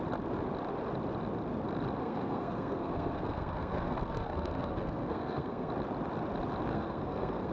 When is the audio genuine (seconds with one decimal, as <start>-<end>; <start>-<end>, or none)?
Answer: 0.0-2.0; 5.7-6.7